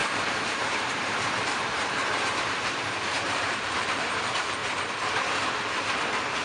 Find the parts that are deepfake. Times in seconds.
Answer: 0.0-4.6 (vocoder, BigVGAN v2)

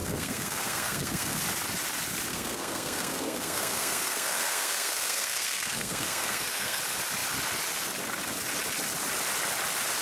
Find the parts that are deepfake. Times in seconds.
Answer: 0.0-1.4 (codec, SNAC); 2.3-6.8

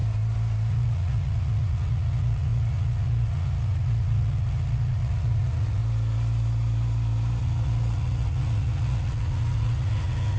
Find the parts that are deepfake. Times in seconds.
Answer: 0.7-5.8 (vocoder, Vocos); 7.4-10.4

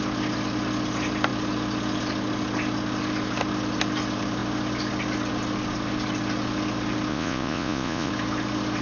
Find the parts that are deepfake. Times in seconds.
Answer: 7.1-8.1 (vocoder, Vocos)

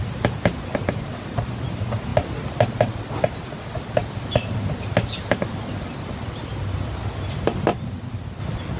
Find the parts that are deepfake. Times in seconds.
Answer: 0.0-2.1 (vocoder, BigVGAN v2); 7.3-8.8

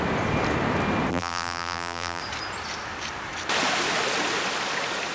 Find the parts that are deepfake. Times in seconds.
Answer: 1.1-2.2 (vocoder, BigVGAN v2)